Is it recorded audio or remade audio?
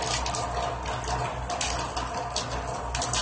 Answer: recorded